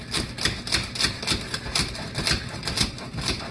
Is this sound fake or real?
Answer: real